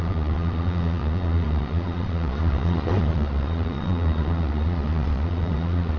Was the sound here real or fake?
fake